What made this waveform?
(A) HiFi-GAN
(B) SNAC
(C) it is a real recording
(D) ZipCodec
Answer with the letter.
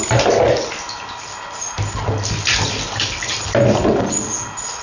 C